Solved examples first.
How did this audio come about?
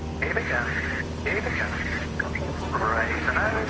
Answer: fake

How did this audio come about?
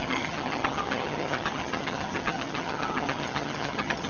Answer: fake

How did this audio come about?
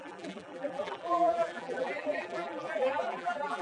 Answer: fake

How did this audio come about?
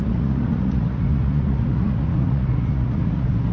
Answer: fake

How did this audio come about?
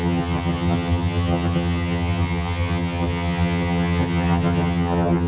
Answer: fake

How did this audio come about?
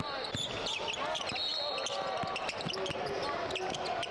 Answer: real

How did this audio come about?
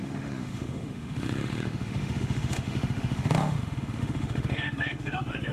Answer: fake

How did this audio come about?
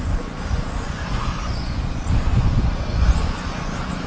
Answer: fake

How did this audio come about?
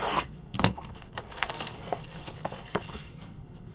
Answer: fake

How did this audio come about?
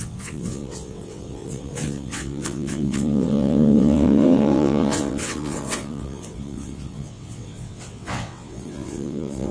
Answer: fake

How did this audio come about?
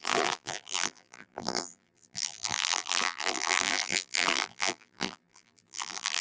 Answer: fake